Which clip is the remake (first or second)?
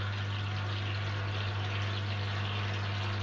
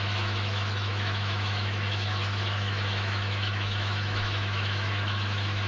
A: second